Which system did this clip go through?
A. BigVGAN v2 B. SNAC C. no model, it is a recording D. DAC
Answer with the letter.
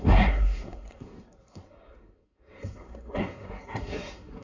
B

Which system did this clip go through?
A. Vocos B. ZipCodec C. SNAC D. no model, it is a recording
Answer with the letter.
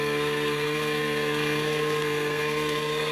C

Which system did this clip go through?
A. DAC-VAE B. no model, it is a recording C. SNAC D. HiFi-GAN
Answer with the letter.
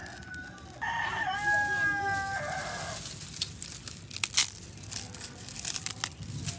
B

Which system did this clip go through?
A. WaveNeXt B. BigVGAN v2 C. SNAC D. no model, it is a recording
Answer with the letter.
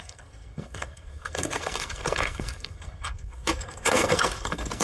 C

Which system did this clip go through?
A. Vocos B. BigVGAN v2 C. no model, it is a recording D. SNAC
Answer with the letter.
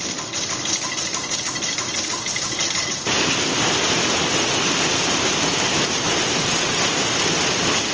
C